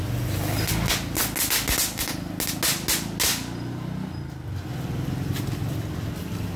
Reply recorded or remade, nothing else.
recorded